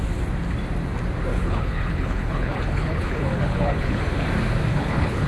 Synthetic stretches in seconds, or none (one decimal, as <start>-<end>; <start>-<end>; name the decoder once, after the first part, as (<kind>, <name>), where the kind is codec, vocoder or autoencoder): 1.3-4.0 (codec, HILCodec); 4.7-5.3